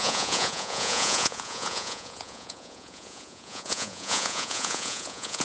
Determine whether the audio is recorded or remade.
remade